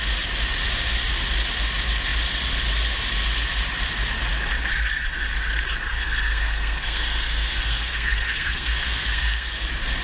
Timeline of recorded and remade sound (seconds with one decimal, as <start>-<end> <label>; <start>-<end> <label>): 0.0-5.9 recorded; 5.9-9.5 remade; 9.5-10.0 recorded